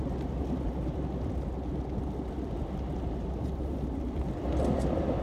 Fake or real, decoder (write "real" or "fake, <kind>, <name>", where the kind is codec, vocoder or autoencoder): real